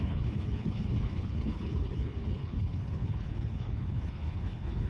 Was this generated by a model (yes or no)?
yes